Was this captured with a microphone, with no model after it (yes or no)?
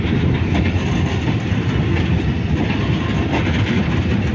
yes